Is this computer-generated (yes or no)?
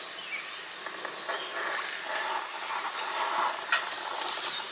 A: no